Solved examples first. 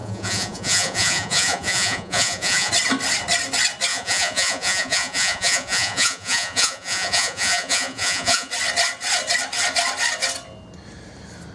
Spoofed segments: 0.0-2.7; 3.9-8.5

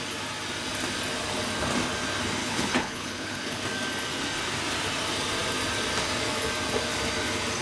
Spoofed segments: 2.4-3.6

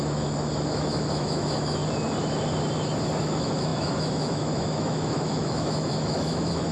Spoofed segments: 0.0-1.8; 3.2-6.7

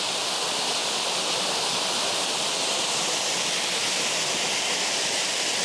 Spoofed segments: none